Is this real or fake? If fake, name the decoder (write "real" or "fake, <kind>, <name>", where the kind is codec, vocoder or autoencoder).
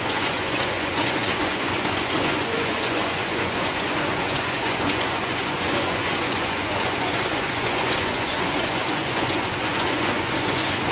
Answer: fake, vocoder, Vocos